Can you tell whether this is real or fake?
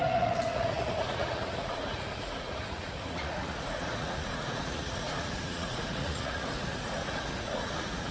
fake